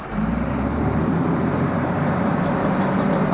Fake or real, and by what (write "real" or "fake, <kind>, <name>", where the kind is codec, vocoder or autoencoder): fake, vocoder, BigVGAN v2